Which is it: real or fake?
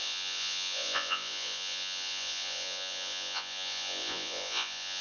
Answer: fake